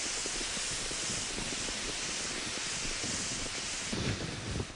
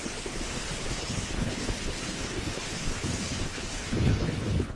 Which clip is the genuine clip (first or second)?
first